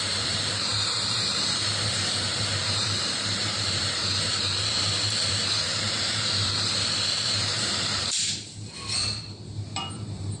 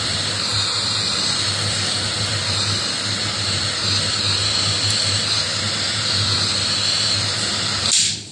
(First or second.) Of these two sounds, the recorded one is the second